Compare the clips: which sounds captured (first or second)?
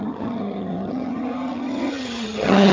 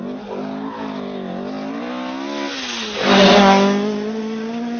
second